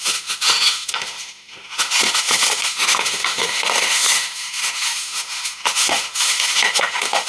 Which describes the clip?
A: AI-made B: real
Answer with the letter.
A